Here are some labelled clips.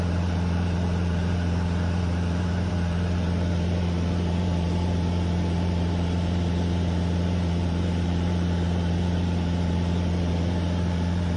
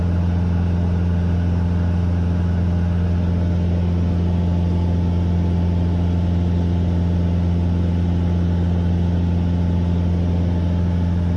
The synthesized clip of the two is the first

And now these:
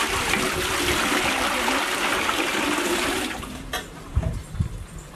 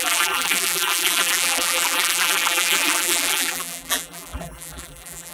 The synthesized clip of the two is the second